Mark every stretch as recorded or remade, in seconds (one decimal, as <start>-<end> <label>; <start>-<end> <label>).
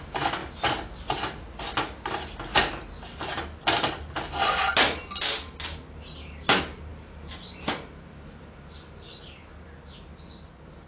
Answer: 0.0-6.9 recorded; 6.9-9.1 remade; 9.1-10.9 recorded